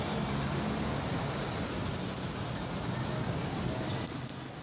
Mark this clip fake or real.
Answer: real